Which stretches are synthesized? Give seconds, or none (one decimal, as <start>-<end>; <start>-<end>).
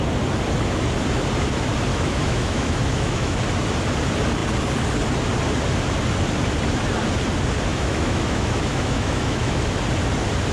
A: 1.9-3.4; 7.7-9.8